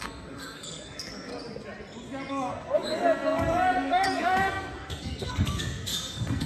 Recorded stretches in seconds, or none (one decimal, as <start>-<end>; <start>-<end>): 1.3-2.3